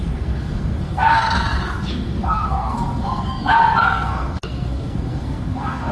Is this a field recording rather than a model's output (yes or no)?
no